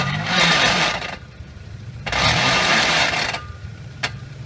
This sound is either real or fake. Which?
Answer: fake